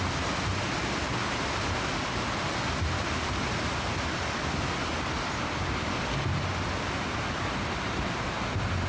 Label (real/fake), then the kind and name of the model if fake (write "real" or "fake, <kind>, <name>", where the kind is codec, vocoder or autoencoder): real